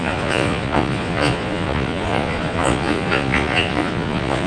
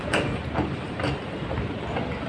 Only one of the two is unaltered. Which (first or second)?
second